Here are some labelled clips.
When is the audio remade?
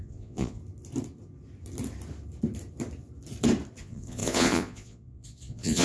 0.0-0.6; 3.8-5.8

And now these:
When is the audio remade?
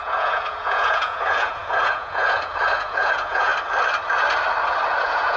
0.0-3.5; 5.0-5.4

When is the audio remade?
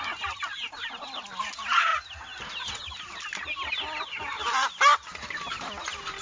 none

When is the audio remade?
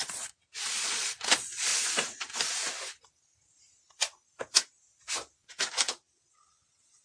0.0-1.7; 5.9-7.0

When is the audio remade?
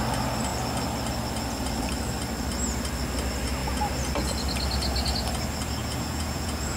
5.8-6.8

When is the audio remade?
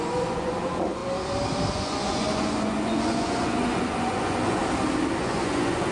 0.0-1.0; 1.7-4.6; 5.2-5.9